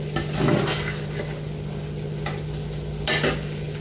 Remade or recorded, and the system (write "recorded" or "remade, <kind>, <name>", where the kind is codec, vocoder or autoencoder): recorded